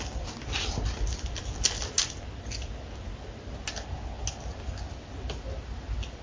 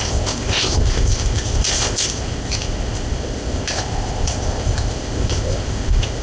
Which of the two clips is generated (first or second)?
second